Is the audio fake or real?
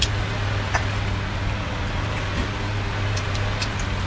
real